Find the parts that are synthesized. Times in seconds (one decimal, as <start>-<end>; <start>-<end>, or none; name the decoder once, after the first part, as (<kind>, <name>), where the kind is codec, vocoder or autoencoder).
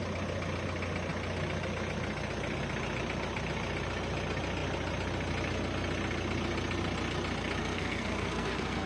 7.6-8.9 (codec, SNAC)